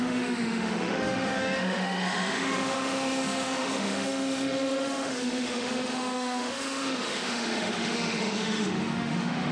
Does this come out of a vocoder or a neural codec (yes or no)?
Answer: yes